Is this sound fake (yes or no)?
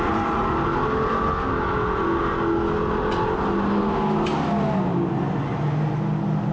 no